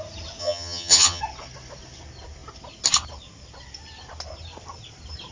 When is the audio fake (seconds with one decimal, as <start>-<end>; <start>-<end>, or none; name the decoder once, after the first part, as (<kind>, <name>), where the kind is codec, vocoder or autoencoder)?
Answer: 0.4-1.2 (vocoder, HiFi-GAN)